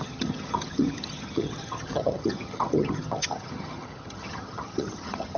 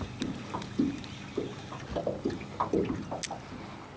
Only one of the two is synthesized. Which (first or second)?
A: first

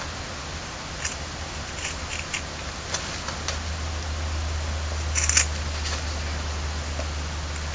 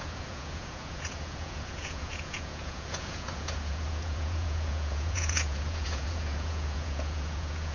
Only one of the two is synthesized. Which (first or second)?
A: second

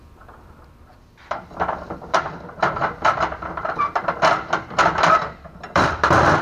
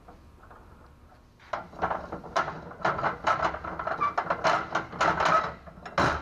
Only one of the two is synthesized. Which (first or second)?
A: first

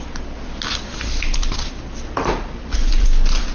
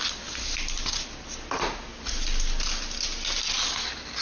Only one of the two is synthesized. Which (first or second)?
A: first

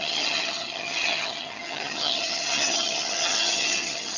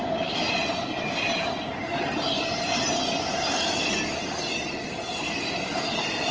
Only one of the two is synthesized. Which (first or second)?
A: first